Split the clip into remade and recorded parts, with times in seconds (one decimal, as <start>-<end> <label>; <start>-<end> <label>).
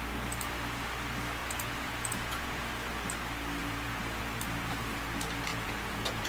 0.0-1.4 recorded; 1.4-2.7 remade; 2.7-3.6 recorded; 3.6-4.2 remade; 4.2-5.5 recorded; 5.5-6.3 remade